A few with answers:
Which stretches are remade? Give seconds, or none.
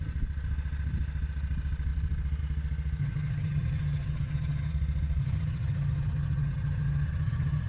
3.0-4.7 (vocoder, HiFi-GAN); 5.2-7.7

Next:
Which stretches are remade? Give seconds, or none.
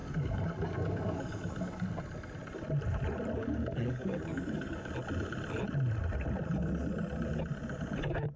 0.0-1.9 (codec, DAC); 3.4-4.9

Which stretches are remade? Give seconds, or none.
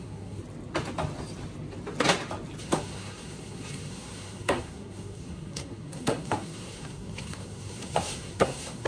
0.0-0.4 (codec, SNAC); 2.6-8.9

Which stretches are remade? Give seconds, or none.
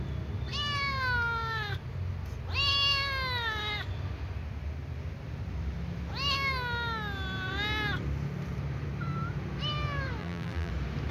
10.2-10.7 (vocoder, BigVGAN v2)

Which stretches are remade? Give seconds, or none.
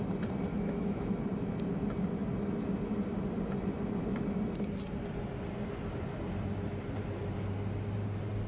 0.5-1.1 (autoencoder, DAC-VAE)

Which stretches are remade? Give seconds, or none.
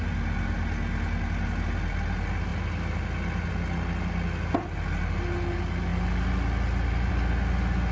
none